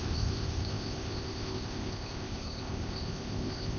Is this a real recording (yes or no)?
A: no